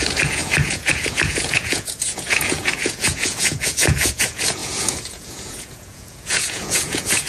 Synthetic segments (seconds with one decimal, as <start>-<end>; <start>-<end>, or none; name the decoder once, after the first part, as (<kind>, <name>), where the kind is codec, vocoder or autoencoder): 0.0-7.3 (vocoder, Vocos)